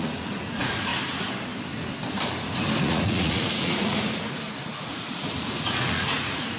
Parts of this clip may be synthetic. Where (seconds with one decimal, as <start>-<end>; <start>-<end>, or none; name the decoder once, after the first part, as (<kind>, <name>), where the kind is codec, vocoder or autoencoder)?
0.0-0.9 (vocoder, Vocos); 2.8-6.6